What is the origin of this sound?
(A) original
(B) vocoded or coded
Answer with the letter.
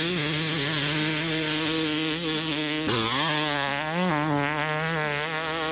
A